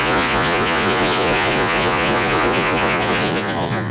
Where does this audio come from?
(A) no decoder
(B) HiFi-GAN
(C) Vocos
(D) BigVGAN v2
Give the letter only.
C